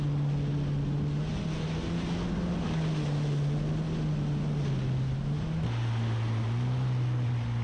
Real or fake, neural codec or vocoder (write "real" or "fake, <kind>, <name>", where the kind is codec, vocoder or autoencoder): real